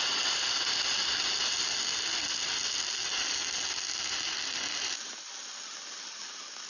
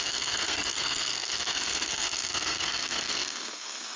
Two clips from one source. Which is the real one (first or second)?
first